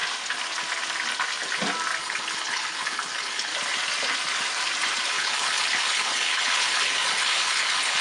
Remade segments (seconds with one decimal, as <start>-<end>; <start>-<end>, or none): 2.0-3.5; 5.1-8.0